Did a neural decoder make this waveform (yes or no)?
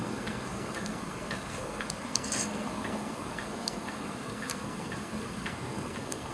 yes